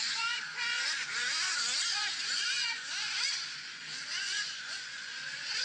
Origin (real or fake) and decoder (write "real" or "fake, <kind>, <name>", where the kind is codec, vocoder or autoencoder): fake, vocoder, Vocos